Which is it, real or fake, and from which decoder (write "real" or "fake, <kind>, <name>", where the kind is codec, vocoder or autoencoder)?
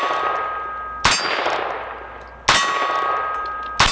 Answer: real